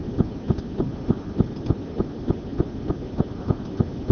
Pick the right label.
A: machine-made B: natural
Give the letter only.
B